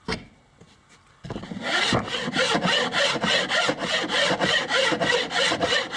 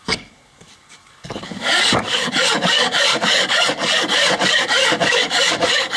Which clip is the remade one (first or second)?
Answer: second